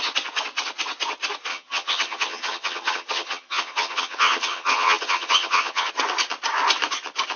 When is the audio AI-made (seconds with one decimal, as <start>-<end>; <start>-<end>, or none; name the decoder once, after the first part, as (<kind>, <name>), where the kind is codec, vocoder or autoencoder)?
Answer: 1.5-5.9 (vocoder, HiFi-GAN)